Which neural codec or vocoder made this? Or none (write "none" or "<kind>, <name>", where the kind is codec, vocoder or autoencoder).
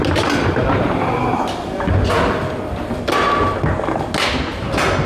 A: none